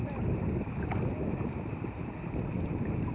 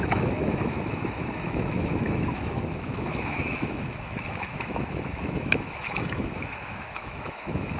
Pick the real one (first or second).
first